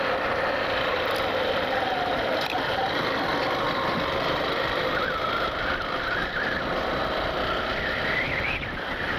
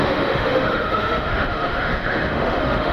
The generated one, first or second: second